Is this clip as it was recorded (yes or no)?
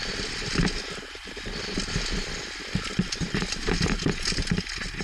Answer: yes